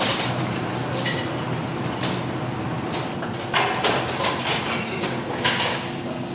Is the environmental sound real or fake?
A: real